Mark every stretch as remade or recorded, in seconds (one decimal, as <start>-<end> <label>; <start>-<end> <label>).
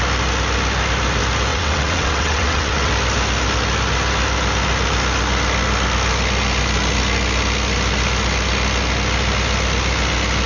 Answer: 0.0-1.5 recorded; 1.5-2.9 remade; 2.9-10.5 recorded